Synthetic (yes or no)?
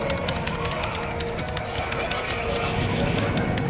no